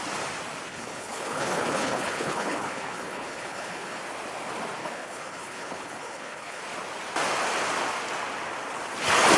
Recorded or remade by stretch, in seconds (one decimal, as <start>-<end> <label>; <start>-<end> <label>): 0.0-0.7 recorded; 0.7-4.0 remade; 4.0-4.8 recorded; 4.8-6.6 remade; 6.6-9.4 recorded